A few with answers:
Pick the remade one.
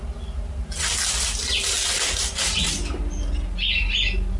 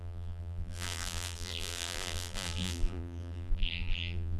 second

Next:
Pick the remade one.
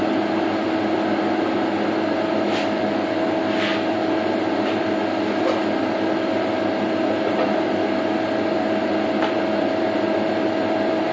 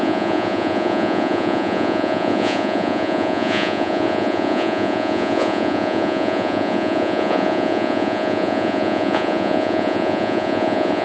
second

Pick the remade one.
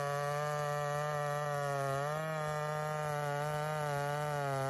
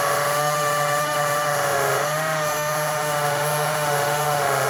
second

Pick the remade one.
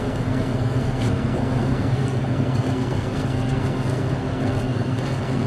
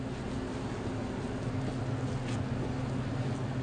first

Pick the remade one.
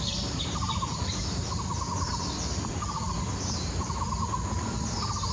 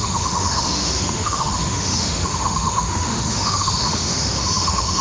second